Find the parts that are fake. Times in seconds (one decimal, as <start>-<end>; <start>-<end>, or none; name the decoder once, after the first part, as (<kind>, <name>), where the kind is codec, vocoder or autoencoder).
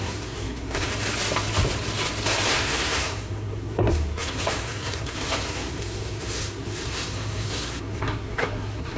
0.0-0.9 (codec, SNAC); 2.5-9.0